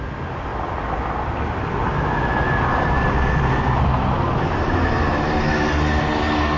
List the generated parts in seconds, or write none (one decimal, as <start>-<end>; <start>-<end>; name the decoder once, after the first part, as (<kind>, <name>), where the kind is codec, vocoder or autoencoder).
none